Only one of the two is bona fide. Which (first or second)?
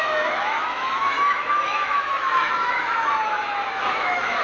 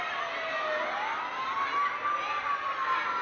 second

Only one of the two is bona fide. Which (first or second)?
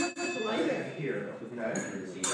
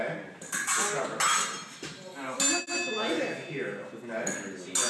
second